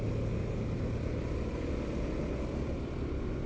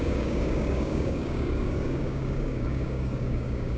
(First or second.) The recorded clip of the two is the first